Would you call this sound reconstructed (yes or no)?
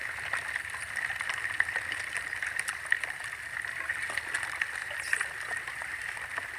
no